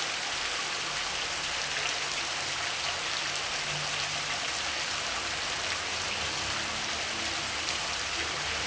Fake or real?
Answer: real